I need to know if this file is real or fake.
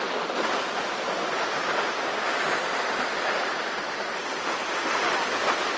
real